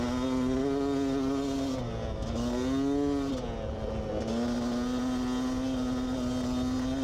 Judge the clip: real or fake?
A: real